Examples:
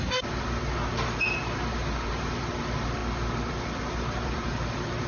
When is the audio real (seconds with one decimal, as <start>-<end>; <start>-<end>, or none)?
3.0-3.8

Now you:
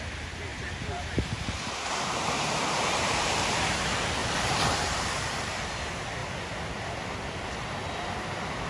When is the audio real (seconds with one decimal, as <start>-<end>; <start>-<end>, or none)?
0.0-0.5; 3.6-4.2; 5.7-8.7

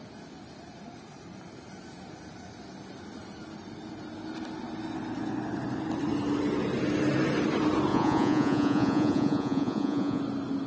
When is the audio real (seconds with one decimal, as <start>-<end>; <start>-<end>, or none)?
0.0-7.9; 10.2-10.7

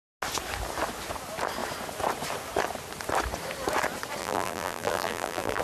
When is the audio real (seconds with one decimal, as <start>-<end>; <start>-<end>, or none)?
0.0-4.2